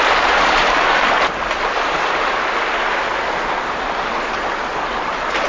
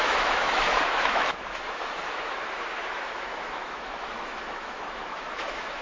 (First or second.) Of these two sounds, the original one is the first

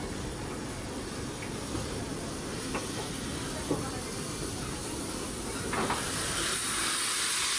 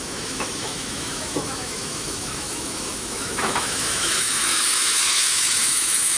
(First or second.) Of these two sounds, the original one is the first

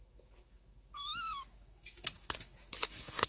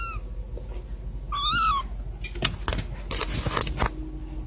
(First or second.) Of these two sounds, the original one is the second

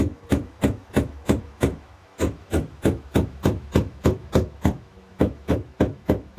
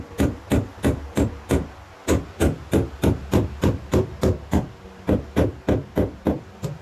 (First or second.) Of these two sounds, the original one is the second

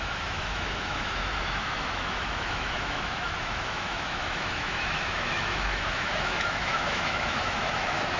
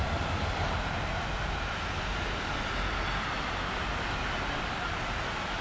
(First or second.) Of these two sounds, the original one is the second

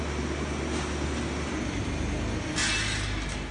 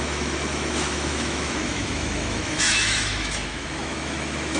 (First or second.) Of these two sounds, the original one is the first